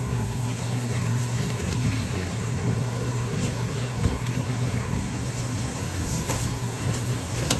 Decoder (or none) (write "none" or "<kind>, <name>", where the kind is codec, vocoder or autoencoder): codec, SNAC